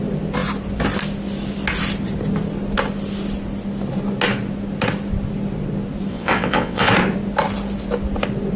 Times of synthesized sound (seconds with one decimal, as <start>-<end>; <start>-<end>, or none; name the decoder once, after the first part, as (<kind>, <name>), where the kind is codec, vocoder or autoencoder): 6.1-6.9 (vocoder, WaveNeXt)